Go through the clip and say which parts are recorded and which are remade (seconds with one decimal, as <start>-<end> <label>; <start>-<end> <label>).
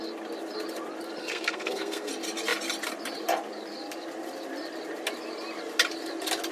0.0-1.2 recorded; 1.2-2.1 remade; 2.1-6.5 recorded